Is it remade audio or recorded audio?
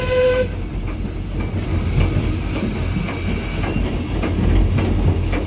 recorded